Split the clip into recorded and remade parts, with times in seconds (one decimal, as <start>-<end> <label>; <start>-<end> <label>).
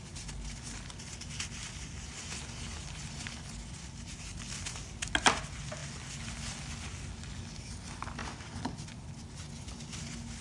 0.0-10.4 recorded